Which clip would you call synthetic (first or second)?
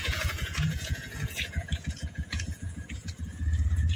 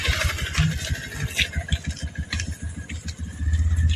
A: first